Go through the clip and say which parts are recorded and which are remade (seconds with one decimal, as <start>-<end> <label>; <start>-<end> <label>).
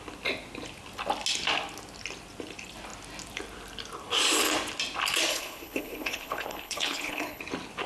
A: 0.0-5.3 recorded; 5.3-7.4 remade; 7.4-7.9 recorded